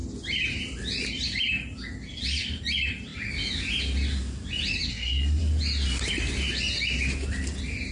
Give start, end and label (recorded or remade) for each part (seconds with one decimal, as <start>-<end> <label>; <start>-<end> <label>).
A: 0.0-4.9 recorded; 4.9-5.4 remade; 5.4-7.9 recorded